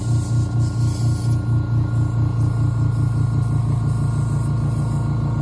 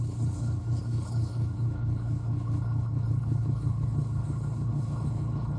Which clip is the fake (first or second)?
second